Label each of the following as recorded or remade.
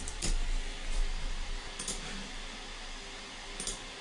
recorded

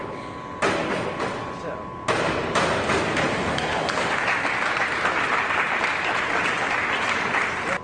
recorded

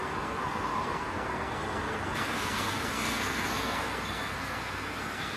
remade